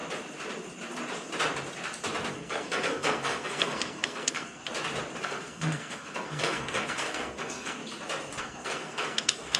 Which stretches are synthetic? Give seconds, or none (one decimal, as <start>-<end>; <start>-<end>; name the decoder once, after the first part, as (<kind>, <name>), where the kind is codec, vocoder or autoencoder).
2.3-4.6 (codec, SNAC); 5.2-7.8; 8.4-9.6